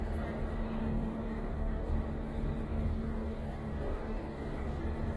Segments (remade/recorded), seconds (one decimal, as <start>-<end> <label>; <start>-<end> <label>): 0.0-0.8 recorded; 0.8-1.9 remade; 1.9-2.7 recorded; 2.7-4.8 remade; 4.8-5.2 recorded